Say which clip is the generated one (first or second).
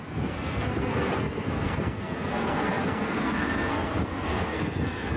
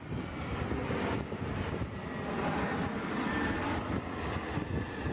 first